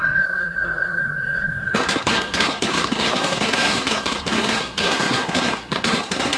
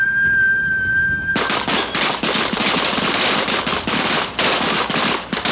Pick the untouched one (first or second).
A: second